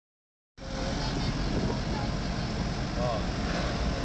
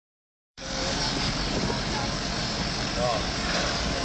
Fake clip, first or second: second